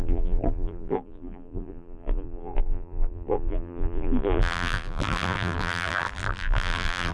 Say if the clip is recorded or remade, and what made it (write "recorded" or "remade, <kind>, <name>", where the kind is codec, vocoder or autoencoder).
remade, vocoder, BigVGAN v2